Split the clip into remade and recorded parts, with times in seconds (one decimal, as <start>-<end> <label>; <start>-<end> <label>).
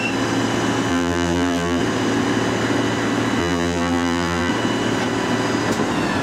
0.0-0.9 recorded; 0.9-1.8 remade; 1.8-3.4 recorded; 3.4-4.5 remade; 4.5-6.2 recorded